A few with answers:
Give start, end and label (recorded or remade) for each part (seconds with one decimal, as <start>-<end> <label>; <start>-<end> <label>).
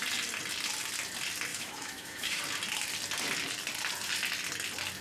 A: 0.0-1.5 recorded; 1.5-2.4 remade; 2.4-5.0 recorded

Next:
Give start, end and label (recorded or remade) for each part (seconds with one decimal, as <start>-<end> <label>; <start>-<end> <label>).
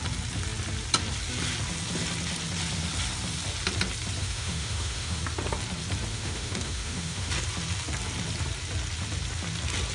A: 0.0-4.2 recorded; 4.2-5.2 remade; 5.2-6.1 recorded; 6.1-7.3 remade; 7.3-9.9 recorded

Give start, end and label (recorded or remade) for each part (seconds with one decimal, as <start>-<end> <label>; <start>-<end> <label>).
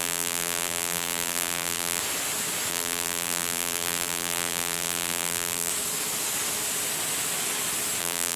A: 0.0-2.0 remade; 2.0-2.7 recorded; 2.7-5.7 remade; 5.7-8.0 recorded; 8.0-8.4 remade